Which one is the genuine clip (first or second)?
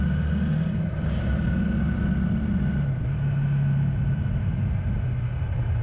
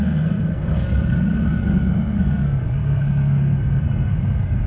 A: first